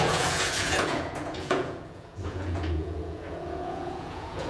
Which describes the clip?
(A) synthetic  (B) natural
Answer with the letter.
A